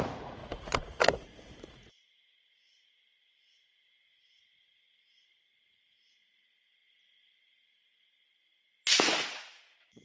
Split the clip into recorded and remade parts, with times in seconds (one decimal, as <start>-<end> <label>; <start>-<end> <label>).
0.0-6.8 remade; 6.8-9.4 recorded; 9.4-10.0 remade